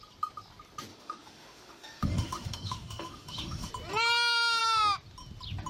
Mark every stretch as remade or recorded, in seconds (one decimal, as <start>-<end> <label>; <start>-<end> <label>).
0.0-0.9 recorded; 0.9-3.7 remade; 3.7-5.7 recorded